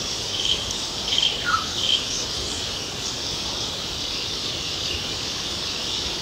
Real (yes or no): no